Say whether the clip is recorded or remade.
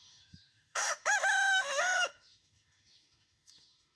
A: remade